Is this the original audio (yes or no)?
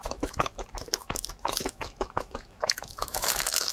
no